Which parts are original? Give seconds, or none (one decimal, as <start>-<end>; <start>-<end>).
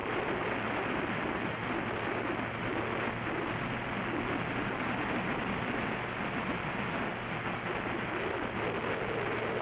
0.0-9.6